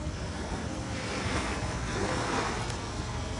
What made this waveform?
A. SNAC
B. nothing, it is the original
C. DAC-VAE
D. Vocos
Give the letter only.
A